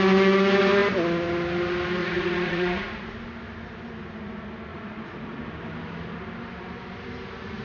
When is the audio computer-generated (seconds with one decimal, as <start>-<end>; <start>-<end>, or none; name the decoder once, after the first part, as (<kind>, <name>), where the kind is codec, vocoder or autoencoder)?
2.0-3.1 (vocoder, Vocos); 4.7-5.4